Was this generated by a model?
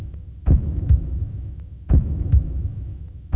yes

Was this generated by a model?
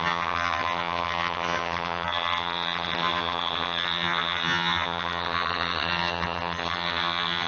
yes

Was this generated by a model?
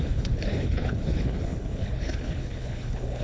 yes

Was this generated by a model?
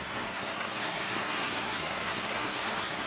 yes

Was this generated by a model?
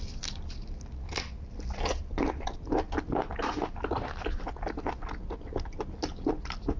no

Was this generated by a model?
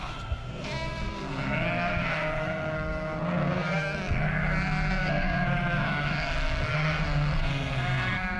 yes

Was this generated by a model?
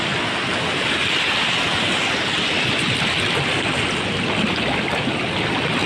no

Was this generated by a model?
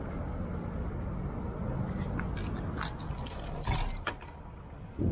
no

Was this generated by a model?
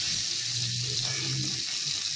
no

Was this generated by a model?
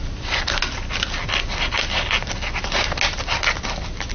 no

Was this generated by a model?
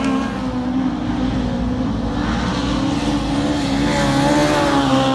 no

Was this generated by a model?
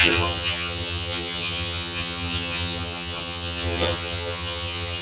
yes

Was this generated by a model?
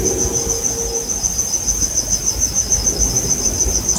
no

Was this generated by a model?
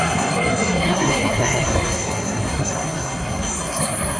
yes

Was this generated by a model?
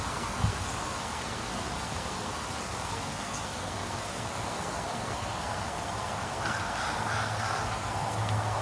yes